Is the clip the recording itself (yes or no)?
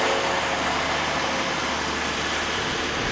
yes